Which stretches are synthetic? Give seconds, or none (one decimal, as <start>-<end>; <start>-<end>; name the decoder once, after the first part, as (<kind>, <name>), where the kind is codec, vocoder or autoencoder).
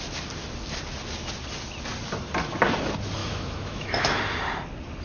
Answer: 3.2-4.2 (autoencoder, DAC-VAE)